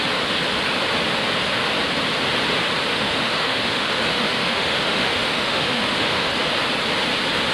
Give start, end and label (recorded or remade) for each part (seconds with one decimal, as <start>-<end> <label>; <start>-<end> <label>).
0.0-2.9 recorded; 2.9-6.3 remade; 6.3-7.5 recorded